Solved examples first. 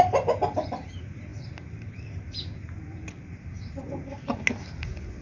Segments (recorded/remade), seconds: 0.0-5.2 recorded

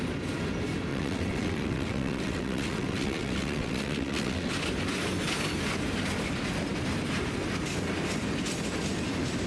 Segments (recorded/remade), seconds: 0.0-0.9 recorded; 0.9-4.5 remade; 4.5-9.5 recorded